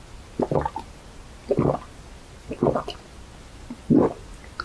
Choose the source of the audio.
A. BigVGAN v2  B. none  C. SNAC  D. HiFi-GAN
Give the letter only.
B